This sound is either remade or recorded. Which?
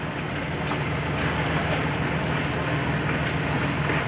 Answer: recorded